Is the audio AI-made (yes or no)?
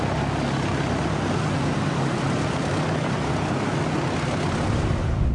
no